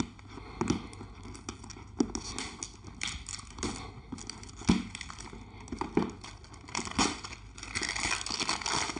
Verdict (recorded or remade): recorded